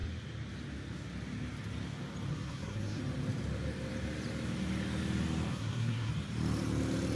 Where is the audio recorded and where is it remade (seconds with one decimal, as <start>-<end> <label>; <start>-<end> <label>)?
0.0-2.3 recorded; 2.3-3.0 remade; 3.0-5.5 recorded; 5.5-6.1 remade; 6.1-7.2 recorded